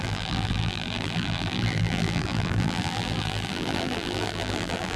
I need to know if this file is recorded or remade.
remade